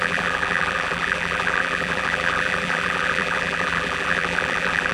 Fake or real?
fake